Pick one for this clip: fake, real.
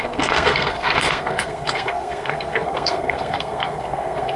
fake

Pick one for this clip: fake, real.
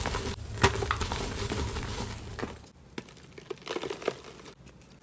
real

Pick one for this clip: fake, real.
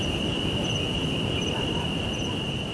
real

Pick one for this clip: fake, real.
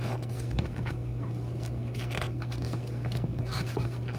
fake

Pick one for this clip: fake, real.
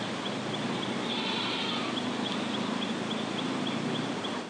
real